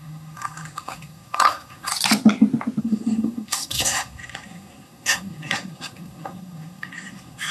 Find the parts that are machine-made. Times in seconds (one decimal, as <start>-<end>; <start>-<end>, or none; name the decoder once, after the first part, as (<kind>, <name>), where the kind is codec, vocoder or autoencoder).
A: 0.0-1.9 (codec, SNAC); 2.8-7.5